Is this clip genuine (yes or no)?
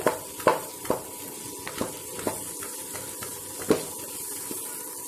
yes